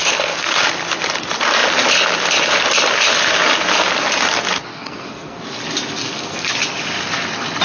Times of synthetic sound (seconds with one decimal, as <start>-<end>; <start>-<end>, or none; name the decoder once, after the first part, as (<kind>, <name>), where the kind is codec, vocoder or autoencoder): 0.0-0.6 (codec, SNAC); 4.7-5.4; 6.0-6.5